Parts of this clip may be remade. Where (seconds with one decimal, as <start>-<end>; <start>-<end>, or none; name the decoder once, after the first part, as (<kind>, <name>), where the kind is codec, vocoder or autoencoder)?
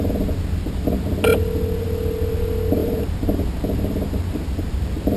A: 2.8-4.5 (vocoder, BigVGAN v2)